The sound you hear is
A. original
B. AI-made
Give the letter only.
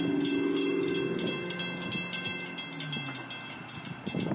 A